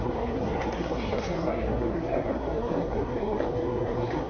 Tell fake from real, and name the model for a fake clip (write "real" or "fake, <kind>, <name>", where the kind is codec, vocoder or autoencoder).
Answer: fake, codec, SNAC